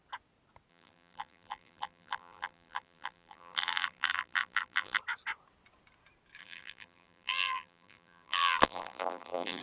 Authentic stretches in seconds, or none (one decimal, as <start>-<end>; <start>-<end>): 0.0-0.7; 5.0-6.4